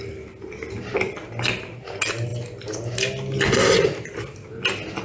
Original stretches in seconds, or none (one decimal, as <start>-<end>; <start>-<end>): 0.0-5.0